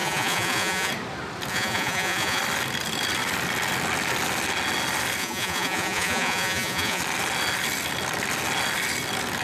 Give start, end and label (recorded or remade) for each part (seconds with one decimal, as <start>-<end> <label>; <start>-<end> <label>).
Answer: 0.0-0.9 remade; 0.9-1.5 recorded; 1.5-2.4 remade; 2.4-5.2 recorded; 5.2-7.0 remade; 7.0-9.4 recorded